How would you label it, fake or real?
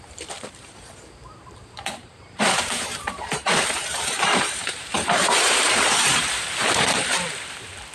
fake